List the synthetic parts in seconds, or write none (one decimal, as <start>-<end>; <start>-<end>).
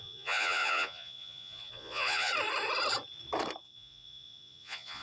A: 0.0-2.3; 3.6-5.0